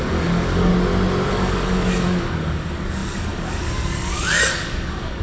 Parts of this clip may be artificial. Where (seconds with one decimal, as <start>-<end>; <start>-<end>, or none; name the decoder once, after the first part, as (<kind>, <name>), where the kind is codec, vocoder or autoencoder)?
0.0-0.7 (codec, DAC); 1.3-5.2